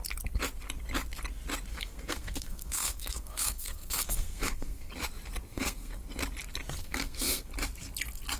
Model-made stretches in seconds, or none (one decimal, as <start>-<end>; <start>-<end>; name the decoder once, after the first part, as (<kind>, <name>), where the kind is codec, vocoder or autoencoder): 1.7-4.9 (codec, SNAC); 5.5-6.0; 6.8-7.5